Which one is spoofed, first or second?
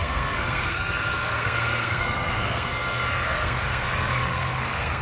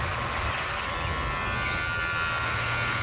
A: first